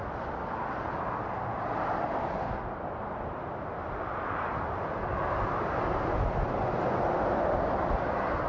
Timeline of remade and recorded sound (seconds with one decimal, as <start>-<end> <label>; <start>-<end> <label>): 0.0-8.5 recorded

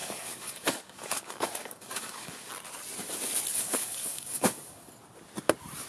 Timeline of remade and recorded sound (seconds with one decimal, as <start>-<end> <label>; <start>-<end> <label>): 0.0-2.5 remade; 2.5-3.5 recorded; 3.5-4.9 remade; 4.9-5.9 recorded

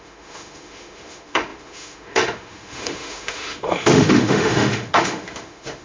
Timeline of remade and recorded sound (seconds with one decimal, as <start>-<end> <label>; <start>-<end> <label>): 0.0-5.8 remade

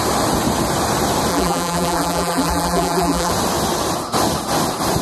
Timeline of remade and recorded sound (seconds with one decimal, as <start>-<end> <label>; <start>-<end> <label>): 0.0-1.3 recorded; 1.3-3.3 remade; 3.3-5.0 recorded

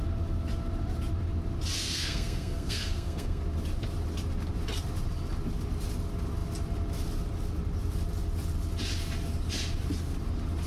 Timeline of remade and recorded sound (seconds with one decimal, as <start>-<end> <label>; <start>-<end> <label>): 0.0-1.8 recorded; 1.8-3.4 remade; 3.4-10.7 recorded

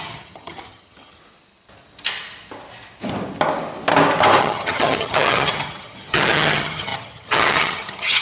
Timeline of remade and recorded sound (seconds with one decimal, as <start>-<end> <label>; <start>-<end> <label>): 0.0-1.2 remade; 1.2-4.4 recorded; 4.4-8.2 remade